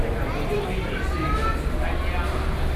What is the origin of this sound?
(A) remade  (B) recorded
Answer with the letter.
B